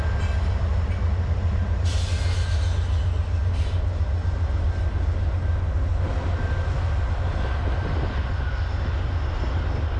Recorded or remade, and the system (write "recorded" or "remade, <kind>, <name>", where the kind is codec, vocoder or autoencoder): recorded